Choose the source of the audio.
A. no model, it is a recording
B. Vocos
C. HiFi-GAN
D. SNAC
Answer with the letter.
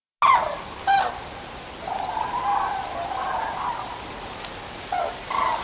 A